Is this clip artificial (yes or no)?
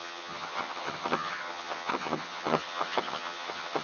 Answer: yes